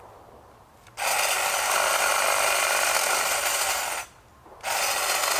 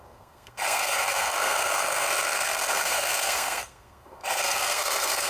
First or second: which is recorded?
first